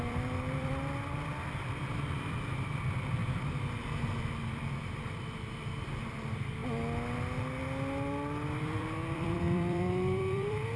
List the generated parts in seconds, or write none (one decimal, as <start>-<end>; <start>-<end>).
0.0-6.6; 8.6-10.8